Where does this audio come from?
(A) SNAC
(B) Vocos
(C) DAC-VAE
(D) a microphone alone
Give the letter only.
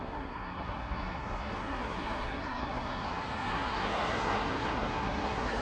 A